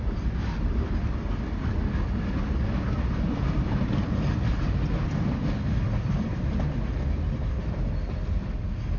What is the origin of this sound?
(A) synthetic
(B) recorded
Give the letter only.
B